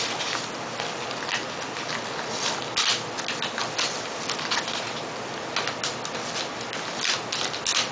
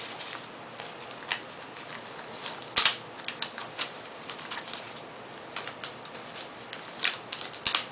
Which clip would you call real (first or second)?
first